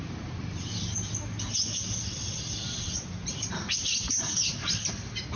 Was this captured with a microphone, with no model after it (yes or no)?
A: no